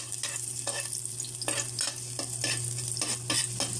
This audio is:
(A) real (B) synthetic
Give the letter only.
A